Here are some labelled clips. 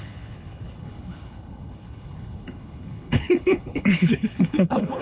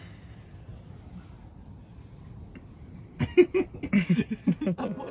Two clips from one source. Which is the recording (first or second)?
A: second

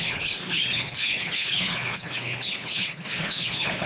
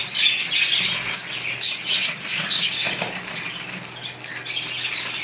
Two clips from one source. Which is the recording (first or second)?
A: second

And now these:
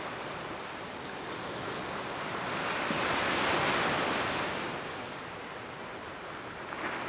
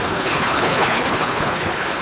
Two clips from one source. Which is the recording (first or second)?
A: first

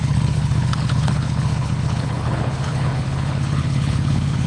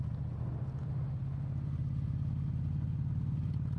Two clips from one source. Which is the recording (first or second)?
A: second